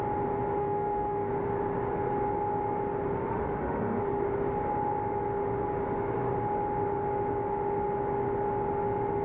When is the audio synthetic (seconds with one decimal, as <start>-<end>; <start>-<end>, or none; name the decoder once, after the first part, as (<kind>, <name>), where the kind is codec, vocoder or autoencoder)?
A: 0.6-1.3 (autoencoder, DAC-VAE); 3.3-4.0